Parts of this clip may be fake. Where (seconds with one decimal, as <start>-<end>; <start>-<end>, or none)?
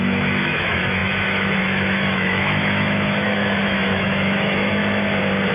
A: 0.0-4.8